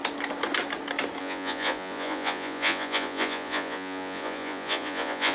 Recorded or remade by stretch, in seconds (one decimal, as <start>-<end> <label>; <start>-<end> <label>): 0.0-1.2 recorded; 1.2-5.3 remade